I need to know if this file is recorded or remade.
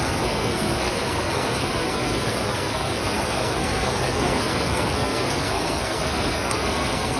remade